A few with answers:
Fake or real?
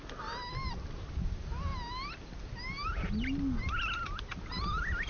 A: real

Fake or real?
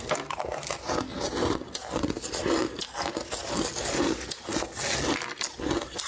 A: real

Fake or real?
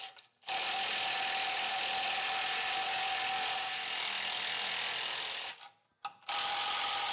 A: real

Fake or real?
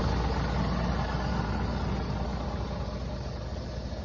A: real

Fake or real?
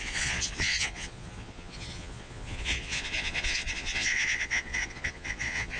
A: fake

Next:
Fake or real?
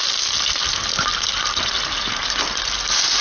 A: real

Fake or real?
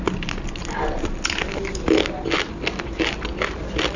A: real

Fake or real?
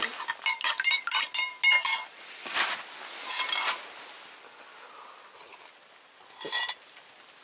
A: real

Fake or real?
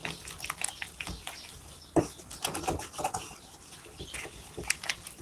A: real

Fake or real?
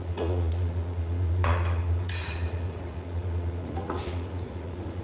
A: fake